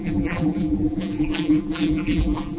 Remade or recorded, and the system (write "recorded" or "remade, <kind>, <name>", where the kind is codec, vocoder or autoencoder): remade, vocoder, BigVGAN v2